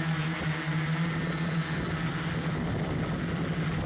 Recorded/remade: recorded